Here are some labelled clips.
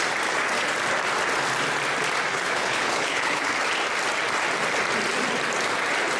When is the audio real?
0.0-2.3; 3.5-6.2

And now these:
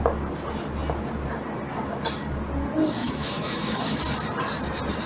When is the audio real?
0.0-3.0; 4.0-5.1

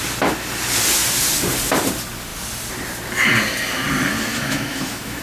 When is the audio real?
0.0-4.3

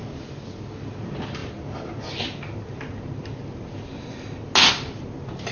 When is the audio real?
0.0-5.5

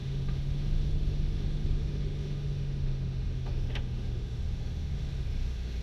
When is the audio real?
none